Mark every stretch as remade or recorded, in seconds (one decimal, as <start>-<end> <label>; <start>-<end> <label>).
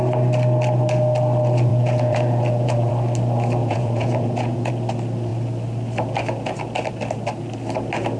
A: 0.0-1.7 recorded; 1.7-2.9 remade; 2.9-3.6 recorded; 3.6-4.7 remade; 4.7-8.2 recorded